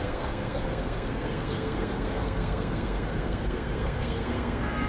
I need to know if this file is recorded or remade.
remade